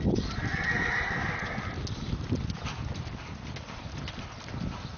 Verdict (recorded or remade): recorded